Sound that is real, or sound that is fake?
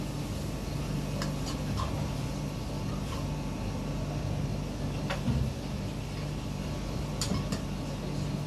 real